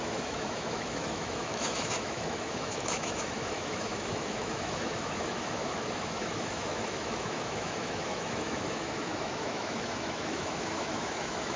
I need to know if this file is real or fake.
fake